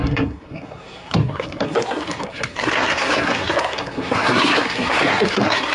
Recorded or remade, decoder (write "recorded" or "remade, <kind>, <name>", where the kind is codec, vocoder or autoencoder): remade, codec, SNAC